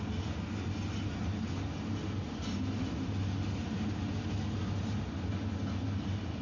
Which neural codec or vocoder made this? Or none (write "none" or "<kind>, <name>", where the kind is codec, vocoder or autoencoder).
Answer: none